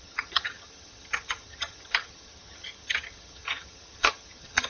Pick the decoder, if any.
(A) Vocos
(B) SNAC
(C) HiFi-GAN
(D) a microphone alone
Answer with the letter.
C